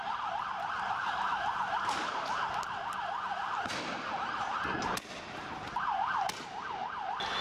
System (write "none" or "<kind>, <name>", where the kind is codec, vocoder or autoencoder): none